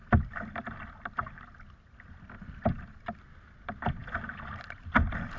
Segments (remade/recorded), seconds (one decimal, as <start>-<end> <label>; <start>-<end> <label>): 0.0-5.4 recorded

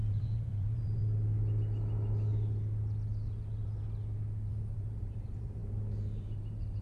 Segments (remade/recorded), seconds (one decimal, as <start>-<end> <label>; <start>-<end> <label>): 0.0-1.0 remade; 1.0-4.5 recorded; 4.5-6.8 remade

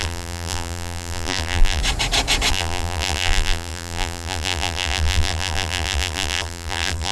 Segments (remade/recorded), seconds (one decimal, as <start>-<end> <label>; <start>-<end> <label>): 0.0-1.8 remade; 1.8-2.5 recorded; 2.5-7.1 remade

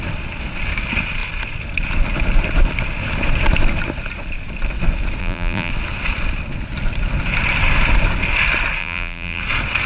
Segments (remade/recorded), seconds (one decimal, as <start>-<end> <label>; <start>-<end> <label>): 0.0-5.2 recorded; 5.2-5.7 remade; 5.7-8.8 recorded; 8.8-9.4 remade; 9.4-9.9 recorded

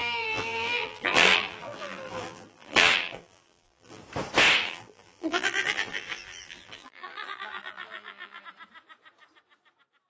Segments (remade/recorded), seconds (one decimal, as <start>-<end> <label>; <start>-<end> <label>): 0.0-4.0 remade; 4.0-4.6 recorded; 4.6-8.4 remade; 8.4-10.1 recorded

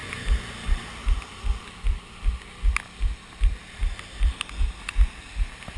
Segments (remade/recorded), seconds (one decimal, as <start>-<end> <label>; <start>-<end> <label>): 0.0-5.8 recorded